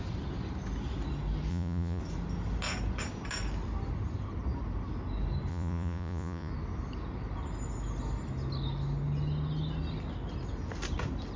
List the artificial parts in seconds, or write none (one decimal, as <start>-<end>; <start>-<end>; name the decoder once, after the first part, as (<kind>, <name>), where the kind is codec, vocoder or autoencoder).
1.5-2.0 (vocoder, Vocos); 5.5-6.5